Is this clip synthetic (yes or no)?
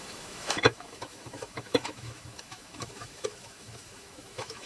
yes